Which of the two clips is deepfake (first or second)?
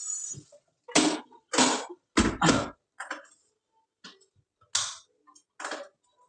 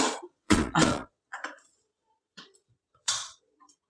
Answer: second